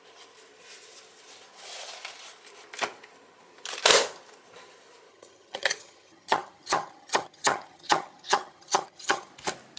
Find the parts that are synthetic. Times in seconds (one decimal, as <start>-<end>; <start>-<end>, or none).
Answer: 5.1-9.3